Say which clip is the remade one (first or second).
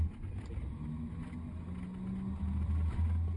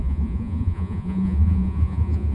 second